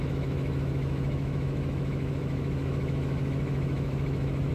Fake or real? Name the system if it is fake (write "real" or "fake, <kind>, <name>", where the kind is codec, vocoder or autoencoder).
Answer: fake, autoencoder, DAC-VAE